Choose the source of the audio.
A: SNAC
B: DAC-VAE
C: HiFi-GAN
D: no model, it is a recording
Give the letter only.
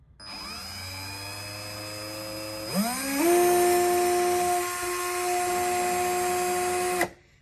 D